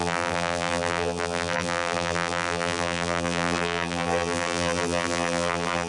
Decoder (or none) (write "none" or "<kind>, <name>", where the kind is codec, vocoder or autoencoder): vocoder, BigVGAN v2